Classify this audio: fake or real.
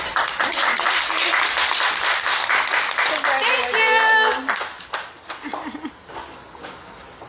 real